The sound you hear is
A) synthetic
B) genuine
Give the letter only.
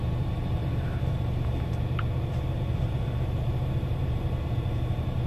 A